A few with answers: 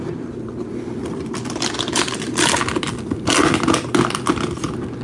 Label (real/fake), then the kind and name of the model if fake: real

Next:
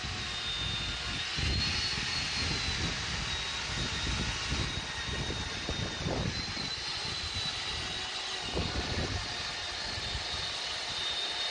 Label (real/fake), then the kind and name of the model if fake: real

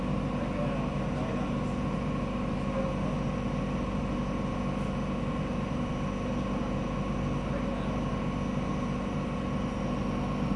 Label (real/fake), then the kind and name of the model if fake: real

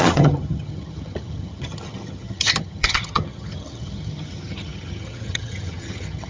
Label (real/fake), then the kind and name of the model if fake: fake, vocoder, HiFi-GAN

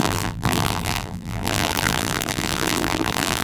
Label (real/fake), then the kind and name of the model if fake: fake, vocoder, BigVGAN v2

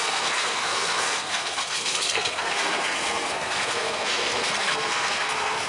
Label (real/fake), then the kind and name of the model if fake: fake, codec, SNAC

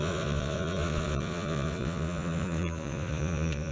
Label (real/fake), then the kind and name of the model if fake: fake, vocoder, Vocos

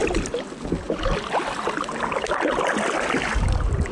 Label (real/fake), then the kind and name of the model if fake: real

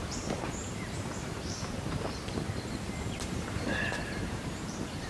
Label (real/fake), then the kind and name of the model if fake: fake, vocoder, BigVGAN v2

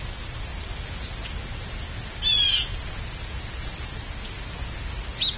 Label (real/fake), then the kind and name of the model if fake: real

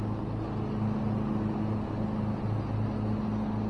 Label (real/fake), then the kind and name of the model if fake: real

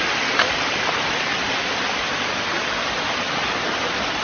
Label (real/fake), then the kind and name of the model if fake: real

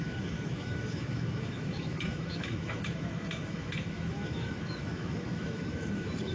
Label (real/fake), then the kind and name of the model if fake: fake, autoencoder, DAC-VAE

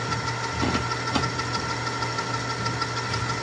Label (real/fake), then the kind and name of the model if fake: real